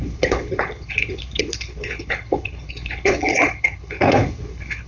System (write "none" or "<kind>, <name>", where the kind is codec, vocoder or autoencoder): codec, HILCodec